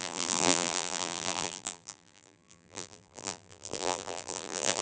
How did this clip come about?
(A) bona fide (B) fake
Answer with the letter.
B